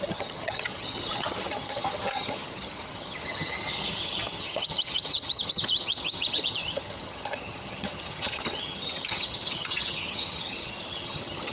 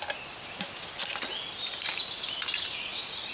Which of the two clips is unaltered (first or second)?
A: second